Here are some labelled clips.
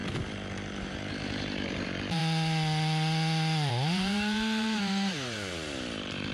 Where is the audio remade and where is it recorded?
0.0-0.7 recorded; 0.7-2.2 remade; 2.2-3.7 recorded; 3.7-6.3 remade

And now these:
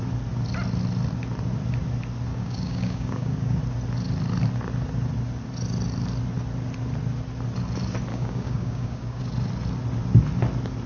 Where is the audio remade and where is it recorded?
0.0-2.3 recorded; 2.3-3.6 remade; 3.6-8.1 recorded; 8.1-9.2 remade; 9.2-10.9 recorded

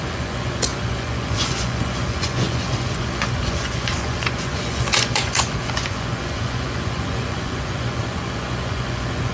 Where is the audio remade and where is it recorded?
0.0-9.3 remade

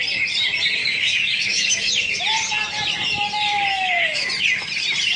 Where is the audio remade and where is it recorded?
0.0-0.8 recorded; 0.8-1.9 remade; 1.9-3.7 recorded; 3.7-4.3 remade; 4.3-5.2 recorded

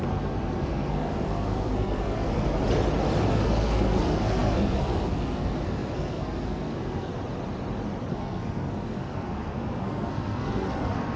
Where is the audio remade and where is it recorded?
0.0-2.6 remade; 2.6-3.3 recorded; 3.3-7.1 remade; 7.1-8.1 recorded; 8.1-11.2 remade

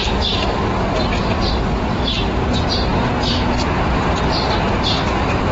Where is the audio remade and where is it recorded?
0.0-2.4 remade; 2.4-2.9 recorded; 2.9-4.2 remade; 4.2-5.5 recorded